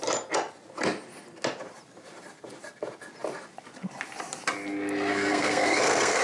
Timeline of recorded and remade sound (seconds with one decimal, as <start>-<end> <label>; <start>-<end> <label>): 0.0-5.1 recorded; 5.1-6.2 remade